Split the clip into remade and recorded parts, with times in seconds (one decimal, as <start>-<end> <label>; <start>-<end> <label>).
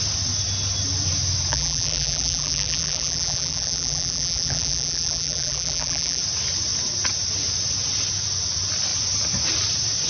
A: 0.0-1.5 recorded; 1.5-6.2 remade; 6.2-10.1 recorded